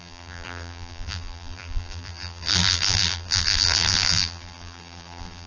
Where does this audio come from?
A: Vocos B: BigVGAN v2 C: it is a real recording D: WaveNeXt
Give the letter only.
B